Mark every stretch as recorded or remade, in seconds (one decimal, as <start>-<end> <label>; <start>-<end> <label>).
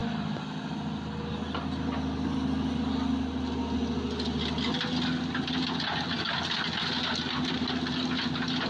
0.0-8.7 recorded